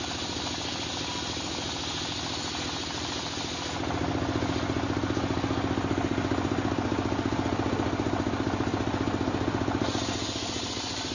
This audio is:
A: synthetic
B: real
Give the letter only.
B